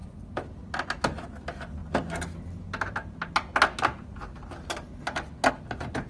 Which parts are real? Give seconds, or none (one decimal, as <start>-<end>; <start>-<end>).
0.0-6.1